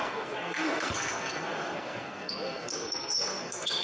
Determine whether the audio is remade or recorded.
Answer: remade